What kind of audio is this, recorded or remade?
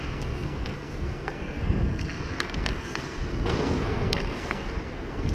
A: remade